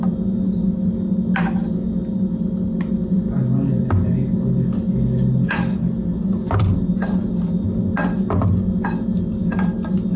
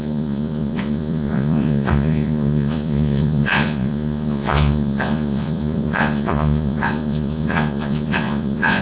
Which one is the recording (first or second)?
first